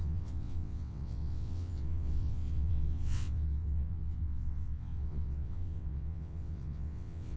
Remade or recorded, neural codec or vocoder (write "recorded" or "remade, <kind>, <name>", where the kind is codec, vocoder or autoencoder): remade, vocoder, WaveNeXt